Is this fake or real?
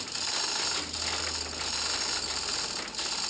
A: real